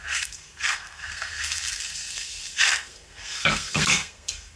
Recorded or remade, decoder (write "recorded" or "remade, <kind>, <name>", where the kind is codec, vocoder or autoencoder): remade, codec, SNAC